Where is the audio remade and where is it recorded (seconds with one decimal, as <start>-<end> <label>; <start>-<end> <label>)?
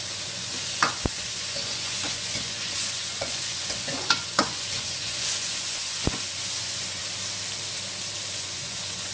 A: 0.0-7.0 remade; 7.0-8.3 recorded; 8.3-9.1 remade